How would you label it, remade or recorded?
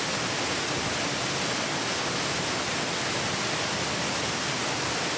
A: recorded